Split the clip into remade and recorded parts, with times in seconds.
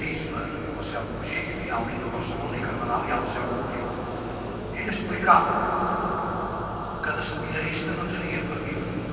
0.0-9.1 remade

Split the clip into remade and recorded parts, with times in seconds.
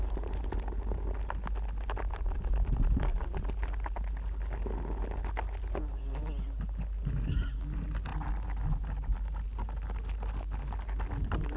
0.0-11.6 recorded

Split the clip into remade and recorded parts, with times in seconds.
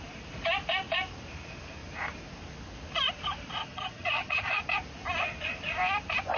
0.0-3.6 recorded; 3.6-4.6 remade; 4.6-6.4 recorded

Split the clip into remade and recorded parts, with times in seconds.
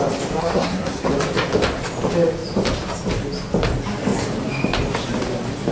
0.0-0.4 recorded; 0.4-1.1 remade; 1.1-5.7 recorded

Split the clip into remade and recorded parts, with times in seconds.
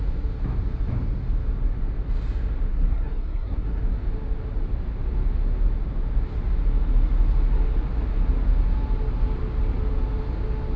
0.0-2.7 recorded; 2.7-3.8 remade; 3.8-10.8 recorded